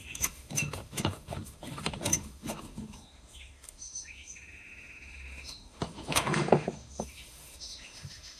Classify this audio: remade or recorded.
remade